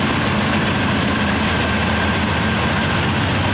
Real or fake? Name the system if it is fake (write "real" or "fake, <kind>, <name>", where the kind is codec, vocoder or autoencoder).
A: real